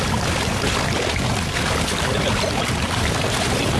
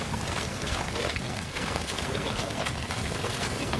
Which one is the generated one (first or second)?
second